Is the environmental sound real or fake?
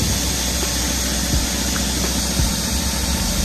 real